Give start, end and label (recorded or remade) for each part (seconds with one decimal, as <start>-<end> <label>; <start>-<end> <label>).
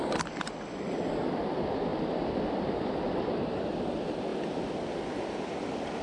0.0-6.0 recorded